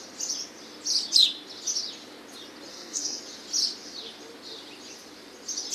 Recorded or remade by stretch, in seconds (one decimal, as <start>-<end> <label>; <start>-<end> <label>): 0.0-2.7 recorded; 2.7-3.2 remade; 3.2-5.7 recorded